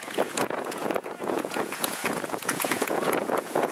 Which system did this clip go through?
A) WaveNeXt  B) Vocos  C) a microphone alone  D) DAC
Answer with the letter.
B